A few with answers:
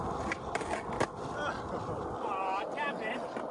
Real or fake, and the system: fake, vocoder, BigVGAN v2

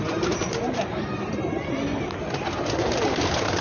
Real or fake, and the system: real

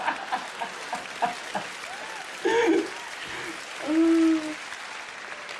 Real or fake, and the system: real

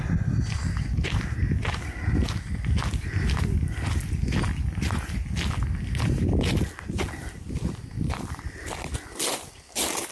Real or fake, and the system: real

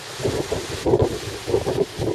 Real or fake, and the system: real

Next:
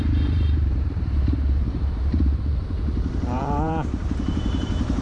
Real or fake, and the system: fake, vocoder, BigVGAN v2